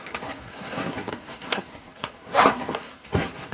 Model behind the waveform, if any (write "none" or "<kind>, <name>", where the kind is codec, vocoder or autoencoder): codec, SNAC